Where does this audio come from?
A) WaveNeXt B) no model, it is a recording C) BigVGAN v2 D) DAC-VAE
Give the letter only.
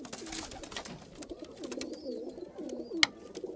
B